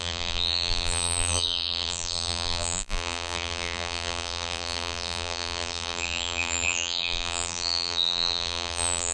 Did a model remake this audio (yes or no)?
yes